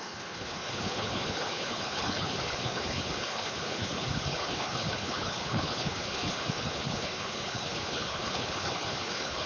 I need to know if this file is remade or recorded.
remade